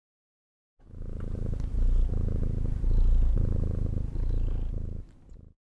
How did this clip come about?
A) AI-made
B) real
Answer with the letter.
B